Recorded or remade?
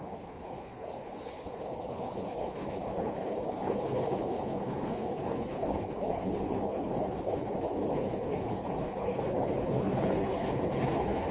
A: remade